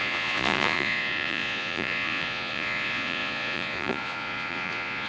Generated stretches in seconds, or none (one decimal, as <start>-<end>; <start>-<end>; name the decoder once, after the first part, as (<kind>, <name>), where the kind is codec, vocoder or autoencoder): 0.0-5.1 (vocoder, Vocos)